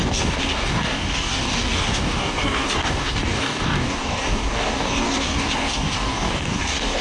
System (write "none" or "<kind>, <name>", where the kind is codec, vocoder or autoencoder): codec, DAC